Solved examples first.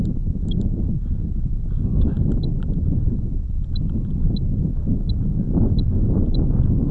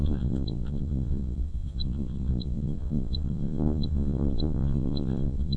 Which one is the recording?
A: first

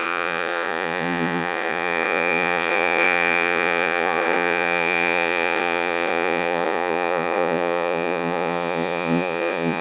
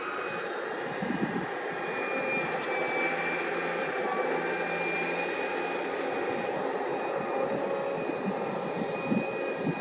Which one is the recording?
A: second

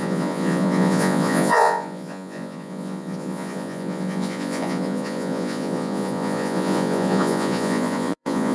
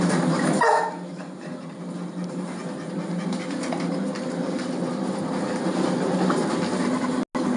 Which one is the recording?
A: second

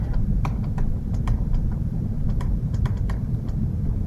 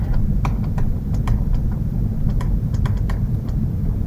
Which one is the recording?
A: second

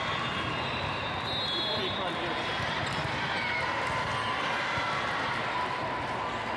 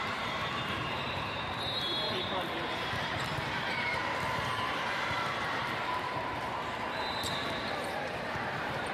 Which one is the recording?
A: first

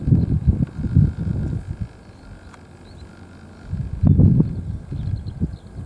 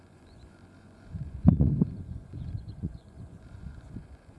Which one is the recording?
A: first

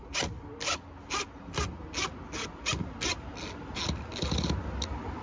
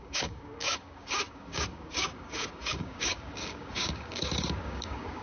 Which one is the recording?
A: first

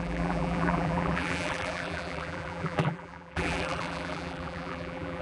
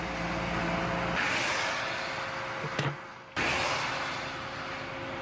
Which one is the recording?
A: second